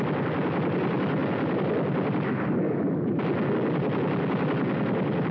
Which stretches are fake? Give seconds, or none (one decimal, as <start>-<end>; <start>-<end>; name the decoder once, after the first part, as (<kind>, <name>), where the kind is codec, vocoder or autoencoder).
none